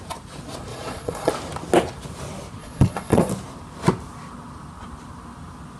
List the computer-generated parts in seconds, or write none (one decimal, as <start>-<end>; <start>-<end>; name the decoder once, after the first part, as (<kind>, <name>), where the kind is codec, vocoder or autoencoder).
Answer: 0.7-1.3 (vocoder, Vocos); 2.6-3.3